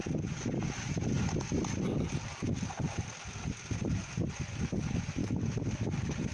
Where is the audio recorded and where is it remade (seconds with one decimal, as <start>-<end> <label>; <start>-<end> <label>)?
0.0-0.7 remade; 0.7-5.2 recorded; 5.2-5.7 remade; 5.7-6.3 recorded